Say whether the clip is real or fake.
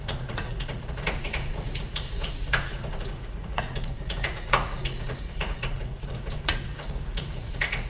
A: fake